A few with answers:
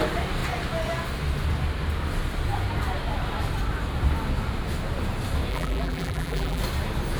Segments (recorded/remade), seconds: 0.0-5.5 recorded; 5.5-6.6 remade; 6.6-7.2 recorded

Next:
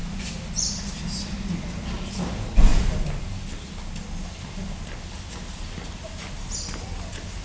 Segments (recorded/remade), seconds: 0.0-7.4 recorded